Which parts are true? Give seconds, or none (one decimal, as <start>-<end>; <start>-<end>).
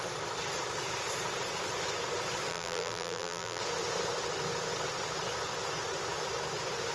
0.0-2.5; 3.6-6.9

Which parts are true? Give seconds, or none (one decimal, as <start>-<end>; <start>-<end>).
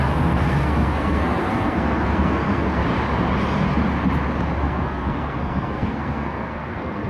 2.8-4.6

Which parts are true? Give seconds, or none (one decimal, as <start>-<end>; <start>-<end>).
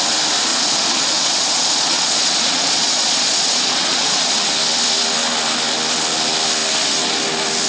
0.0-0.5; 4.3-7.7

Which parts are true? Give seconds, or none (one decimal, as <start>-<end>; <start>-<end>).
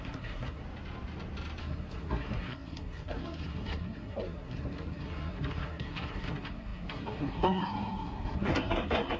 0.6-1.6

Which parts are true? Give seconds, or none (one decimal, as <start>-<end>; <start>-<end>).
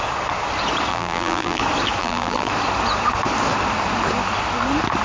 0.0-0.9; 1.6-2.0; 2.5-5.0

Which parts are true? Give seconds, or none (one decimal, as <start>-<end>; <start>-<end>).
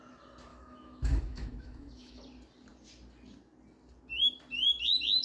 0.0-0.5; 2.2-5.2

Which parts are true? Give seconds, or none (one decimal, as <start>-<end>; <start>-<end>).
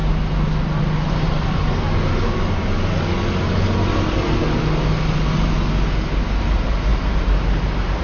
0.0-1.1; 1.6-6.4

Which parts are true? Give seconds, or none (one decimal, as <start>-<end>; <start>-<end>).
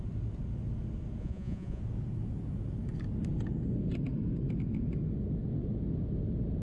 0.0-1.2; 1.8-6.6